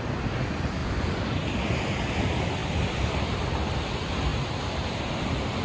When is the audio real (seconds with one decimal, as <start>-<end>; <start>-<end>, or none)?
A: 0.0-0.8; 1.9-2.6; 3.7-5.6